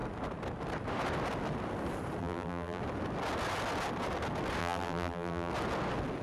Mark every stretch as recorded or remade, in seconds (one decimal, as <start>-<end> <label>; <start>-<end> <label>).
0.0-2.2 recorded; 2.2-2.8 remade; 2.8-4.6 recorded; 4.6-5.5 remade; 5.5-6.2 recorded